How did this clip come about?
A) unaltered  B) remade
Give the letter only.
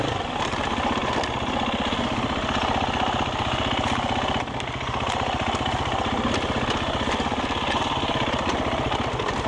A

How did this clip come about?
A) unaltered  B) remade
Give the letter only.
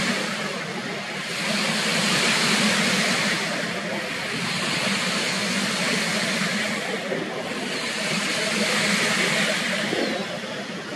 A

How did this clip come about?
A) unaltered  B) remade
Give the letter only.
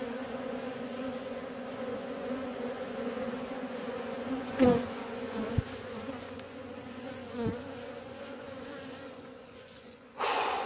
B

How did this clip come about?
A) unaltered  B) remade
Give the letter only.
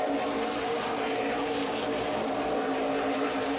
B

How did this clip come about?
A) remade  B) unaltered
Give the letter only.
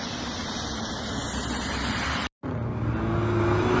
B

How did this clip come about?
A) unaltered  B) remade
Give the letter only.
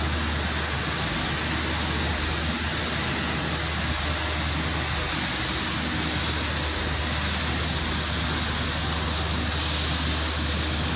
A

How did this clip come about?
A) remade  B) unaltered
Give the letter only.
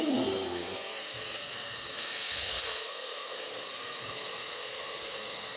A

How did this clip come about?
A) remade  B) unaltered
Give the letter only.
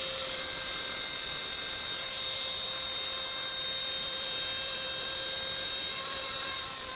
A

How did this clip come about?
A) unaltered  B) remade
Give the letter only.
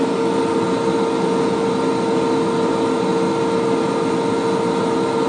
A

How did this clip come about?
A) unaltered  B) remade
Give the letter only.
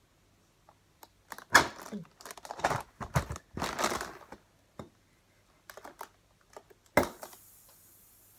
A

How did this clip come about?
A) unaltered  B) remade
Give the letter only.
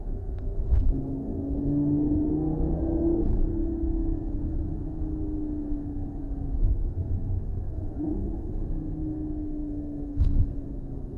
B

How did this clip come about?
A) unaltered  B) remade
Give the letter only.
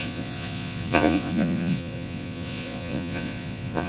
B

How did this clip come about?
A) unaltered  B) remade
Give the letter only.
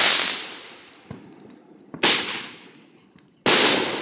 A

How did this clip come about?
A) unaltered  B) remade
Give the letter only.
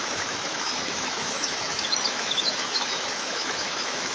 B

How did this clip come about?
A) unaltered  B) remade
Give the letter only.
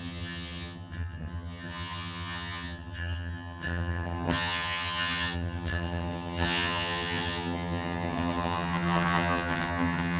B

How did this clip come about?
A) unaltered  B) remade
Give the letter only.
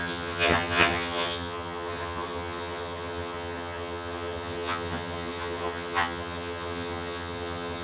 B